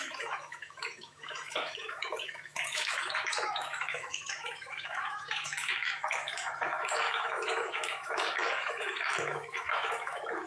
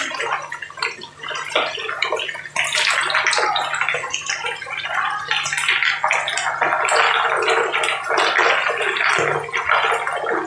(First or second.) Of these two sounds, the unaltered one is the second